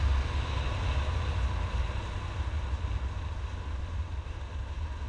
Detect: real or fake real